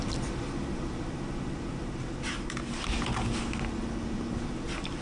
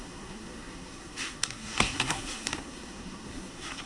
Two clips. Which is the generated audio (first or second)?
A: second